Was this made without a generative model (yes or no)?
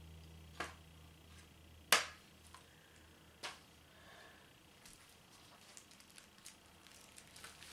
yes